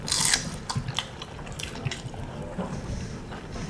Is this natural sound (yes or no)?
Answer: yes